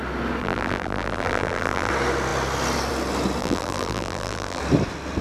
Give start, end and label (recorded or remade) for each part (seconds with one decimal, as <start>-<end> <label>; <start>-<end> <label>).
0.0-0.4 recorded; 0.4-1.9 remade; 1.9-3.4 recorded; 3.4-4.6 remade; 4.6-5.2 recorded